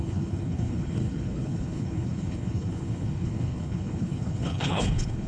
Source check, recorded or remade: remade